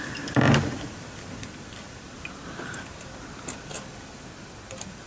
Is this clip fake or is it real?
real